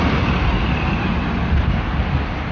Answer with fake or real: real